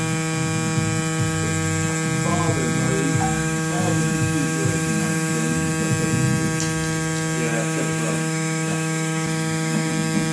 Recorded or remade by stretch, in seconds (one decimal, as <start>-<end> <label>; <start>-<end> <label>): 0.0-3.1 recorded; 3.1-5.7 remade; 5.7-7.5 recorded; 7.5-9.9 remade; 9.9-10.3 recorded